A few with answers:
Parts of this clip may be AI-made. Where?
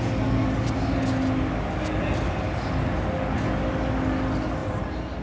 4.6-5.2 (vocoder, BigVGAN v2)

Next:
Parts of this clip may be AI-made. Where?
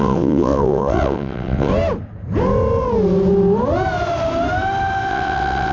0.0-1.7 (vocoder, WaveNeXt); 5.1-5.7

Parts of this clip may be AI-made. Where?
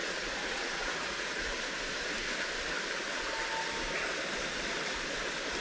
0.0-1.5 (vocoder, Vocos)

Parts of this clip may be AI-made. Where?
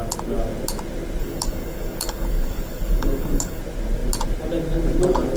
1.2-3.6 (codec, DAC)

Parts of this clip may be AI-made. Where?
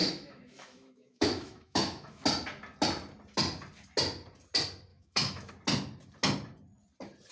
0.0-2.2 (autoencoder, DAC-VAE); 4.9-5.5